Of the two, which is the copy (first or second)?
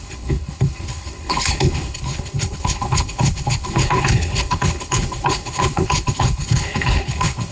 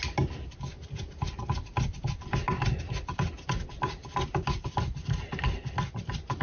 first